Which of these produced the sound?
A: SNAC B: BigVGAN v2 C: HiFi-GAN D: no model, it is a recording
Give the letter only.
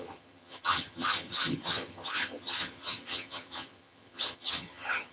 C